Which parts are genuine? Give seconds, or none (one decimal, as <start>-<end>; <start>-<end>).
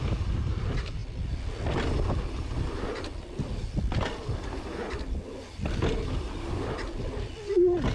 0.0-7.9